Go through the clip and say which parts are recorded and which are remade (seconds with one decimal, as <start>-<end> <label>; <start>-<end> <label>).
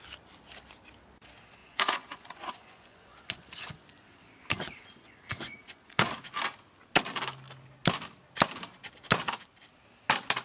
0.0-1.6 recorded; 1.6-6.1 remade; 6.1-10.4 recorded